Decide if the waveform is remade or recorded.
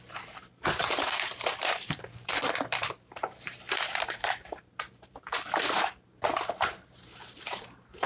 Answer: remade